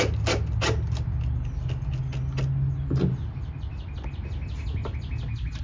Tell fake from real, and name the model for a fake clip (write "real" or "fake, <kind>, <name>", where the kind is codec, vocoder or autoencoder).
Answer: real